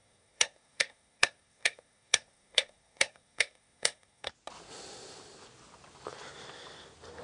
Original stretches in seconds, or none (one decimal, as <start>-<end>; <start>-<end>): 4.3-7.2